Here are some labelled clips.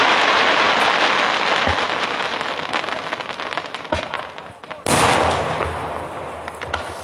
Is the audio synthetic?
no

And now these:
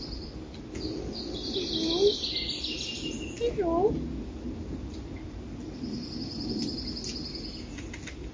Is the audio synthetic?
no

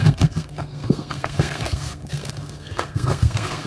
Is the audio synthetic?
yes